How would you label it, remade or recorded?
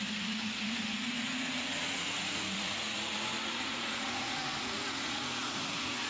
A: remade